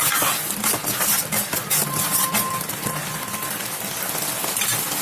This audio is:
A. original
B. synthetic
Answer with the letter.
A